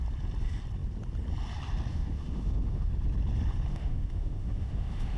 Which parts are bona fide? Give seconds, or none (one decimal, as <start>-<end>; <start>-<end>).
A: 0.0-1.9; 2.9-3.7